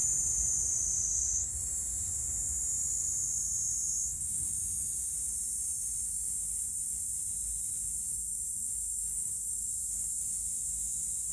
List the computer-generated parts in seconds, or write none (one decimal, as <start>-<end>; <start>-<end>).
4.1-5.1; 8.1-9.7